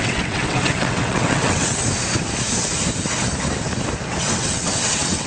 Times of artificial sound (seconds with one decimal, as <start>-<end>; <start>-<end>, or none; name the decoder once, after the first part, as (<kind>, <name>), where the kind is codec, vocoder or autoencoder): 0.0-1.8 (vocoder, WaveNeXt); 4.3-5.3

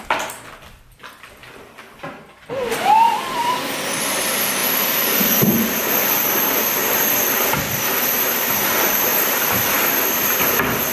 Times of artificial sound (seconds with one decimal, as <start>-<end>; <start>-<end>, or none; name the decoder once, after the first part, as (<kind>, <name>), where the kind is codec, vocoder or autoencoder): 0.0-1.4 (vocoder, BigVGAN v2); 2.7-10.9

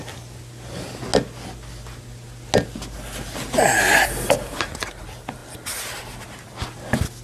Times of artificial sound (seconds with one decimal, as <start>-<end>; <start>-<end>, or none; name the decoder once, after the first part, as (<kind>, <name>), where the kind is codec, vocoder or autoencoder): none

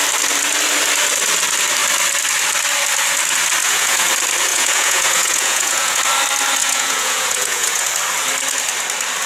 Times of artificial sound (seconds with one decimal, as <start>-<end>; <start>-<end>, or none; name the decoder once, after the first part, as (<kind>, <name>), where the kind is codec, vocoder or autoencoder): 3.6-4.1 (vocoder, Vocos); 4.5-6.0; 6.6-7.9

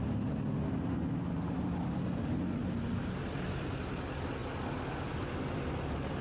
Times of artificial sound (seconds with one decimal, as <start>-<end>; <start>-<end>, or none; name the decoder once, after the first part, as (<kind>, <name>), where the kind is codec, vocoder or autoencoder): none

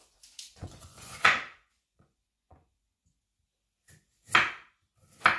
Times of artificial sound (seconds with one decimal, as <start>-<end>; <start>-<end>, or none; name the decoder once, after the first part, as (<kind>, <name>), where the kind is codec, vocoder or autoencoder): 0.0-3.2 (vocoder, Vocos)

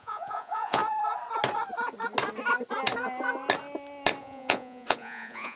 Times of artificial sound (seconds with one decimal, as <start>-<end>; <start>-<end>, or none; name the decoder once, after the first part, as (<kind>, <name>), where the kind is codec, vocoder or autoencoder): 0.0-0.8 (vocoder, Vocos); 4.2-5.6

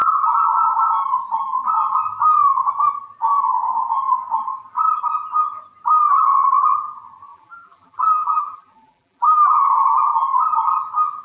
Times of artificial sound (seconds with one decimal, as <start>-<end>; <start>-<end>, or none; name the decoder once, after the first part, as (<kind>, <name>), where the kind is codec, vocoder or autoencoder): 7.3-9.5 (vocoder, BigVGAN v2)